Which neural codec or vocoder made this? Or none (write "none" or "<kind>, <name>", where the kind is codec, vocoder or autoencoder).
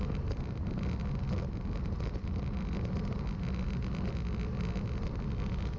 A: none